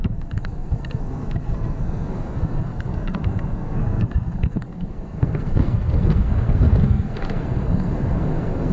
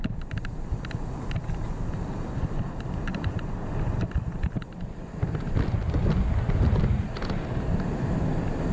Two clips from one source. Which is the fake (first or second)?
first